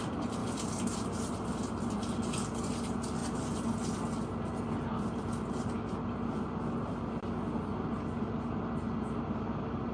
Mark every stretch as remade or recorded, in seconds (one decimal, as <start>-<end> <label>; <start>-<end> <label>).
0.0-9.9 recorded